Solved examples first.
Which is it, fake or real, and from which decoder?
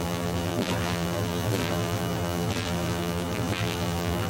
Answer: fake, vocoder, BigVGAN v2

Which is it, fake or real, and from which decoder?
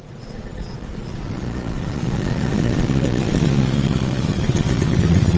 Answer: fake, vocoder, Vocos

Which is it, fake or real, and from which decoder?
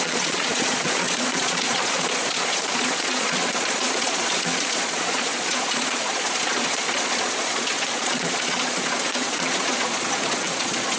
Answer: fake, vocoder, Vocos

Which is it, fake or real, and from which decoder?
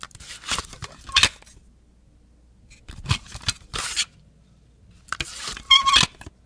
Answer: real